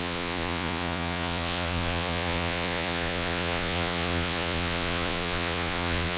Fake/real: fake